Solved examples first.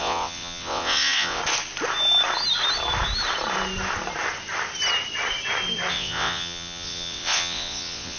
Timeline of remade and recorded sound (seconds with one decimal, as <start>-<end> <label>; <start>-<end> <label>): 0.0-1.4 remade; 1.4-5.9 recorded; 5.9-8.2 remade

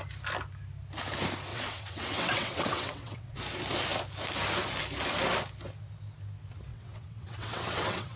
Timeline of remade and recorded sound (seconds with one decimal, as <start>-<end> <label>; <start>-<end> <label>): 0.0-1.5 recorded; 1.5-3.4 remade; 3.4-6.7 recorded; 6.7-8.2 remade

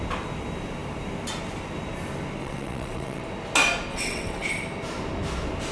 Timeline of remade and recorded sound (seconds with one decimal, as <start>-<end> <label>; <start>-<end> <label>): 0.0-2.4 recorded; 2.4-3.2 remade; 3.2-3.9 recorded; 3.9-4.5 remade; 4.5-5.7 recorded

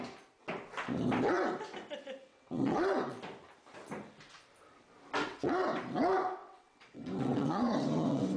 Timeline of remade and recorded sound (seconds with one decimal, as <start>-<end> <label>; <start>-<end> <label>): 0.0-2.3 recorded; 2.3-3.1 remade; 3.1-5.3 recorded; 5.3-5.8 remade; 5.8-6.4 recorded; 6.4-8.4 remade

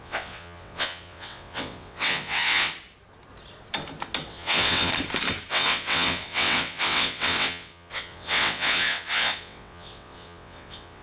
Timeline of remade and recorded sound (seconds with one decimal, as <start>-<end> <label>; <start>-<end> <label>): 0.0-2.7 remade; 2.7-4.3 recorded; 4.3-4.9 remade; 4.9-5.5 recorded; 5.5-11.0 remade